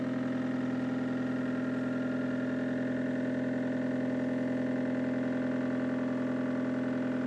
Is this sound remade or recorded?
recorded